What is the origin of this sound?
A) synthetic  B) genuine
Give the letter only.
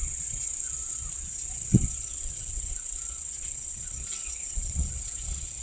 A